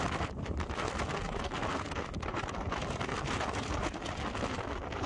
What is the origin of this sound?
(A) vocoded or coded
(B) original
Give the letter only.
A